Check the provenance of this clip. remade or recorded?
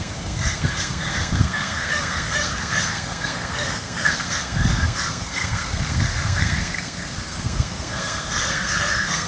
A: remade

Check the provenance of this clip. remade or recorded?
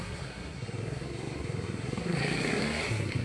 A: remade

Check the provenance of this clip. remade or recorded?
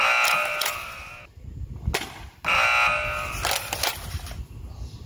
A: recorded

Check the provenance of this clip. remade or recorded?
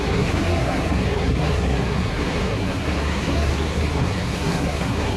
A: remade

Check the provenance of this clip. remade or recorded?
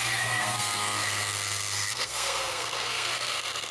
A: remade